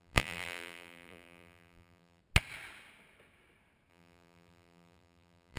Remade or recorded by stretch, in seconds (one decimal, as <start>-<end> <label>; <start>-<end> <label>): 0.0-2.2 remade; 2.2-3.9 recorded; 3.9-5.6 remade